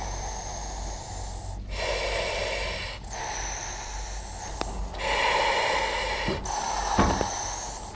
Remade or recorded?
recorded